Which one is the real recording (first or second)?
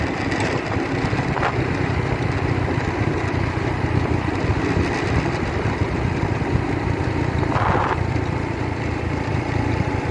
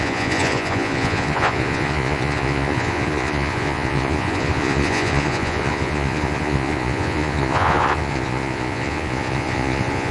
first